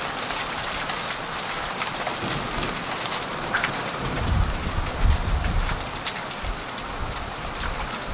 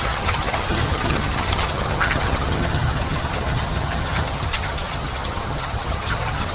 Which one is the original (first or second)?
first